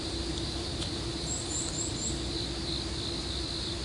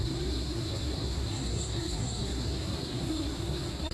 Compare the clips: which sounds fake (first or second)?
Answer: second